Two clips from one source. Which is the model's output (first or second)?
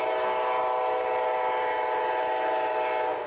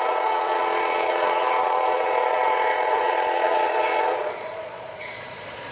second